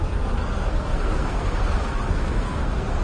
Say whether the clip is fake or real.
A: fake